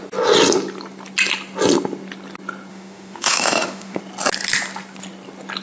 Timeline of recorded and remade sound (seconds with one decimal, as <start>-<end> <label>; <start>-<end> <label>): 0.0-2.7 recorded; 2.7-4.0 remade; 4.0-5.6 recorded